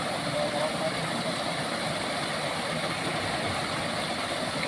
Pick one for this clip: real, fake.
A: real